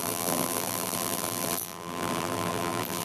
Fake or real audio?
fake